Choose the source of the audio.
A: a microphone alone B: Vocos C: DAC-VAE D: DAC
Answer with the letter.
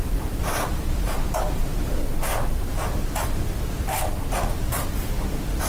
A